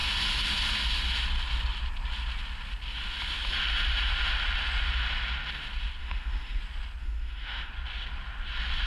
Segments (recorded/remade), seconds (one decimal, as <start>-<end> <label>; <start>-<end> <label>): 0.0-6.0 recorded; 6.0-6.6 remade; 6.6-7.0 recorded; 7.0-7.7 remade; 7.7-8.9 recorded